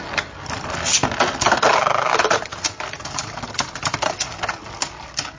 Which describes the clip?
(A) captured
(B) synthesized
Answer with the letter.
A